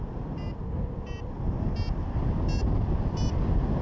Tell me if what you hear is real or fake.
real